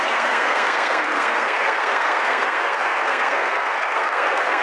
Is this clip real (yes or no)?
no